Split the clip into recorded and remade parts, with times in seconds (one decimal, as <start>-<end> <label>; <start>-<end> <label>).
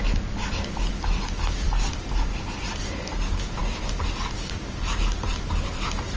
0.0-6.2 recorded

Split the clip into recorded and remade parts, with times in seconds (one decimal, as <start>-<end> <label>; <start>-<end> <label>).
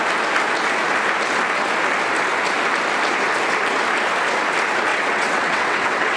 0.0-4.9 recorded; 4.9-6.2 remade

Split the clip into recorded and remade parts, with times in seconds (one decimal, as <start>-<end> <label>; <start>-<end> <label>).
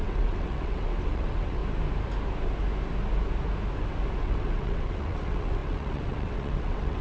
0.0-1.6 remade; 1.6-4.2 recorded; 4.2-7.0 remade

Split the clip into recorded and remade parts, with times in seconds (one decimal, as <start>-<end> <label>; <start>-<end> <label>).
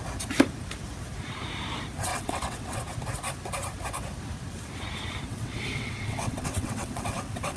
0.0-2.1 recorded; 2.1-2.8 remade; 2.8-5.3 recorded; 5.3-7.6 remade